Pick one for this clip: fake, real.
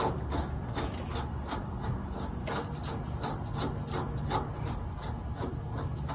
real